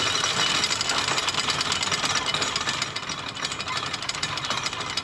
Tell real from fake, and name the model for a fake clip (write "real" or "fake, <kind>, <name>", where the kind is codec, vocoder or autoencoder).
real